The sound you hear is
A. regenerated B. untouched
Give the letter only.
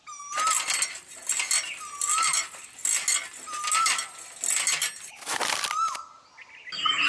B